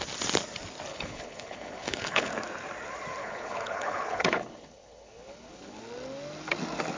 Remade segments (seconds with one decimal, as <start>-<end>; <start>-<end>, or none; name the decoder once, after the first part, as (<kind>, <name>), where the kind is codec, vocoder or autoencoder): 0.9-2.3 (codec, HILCodec); 3.2-5.8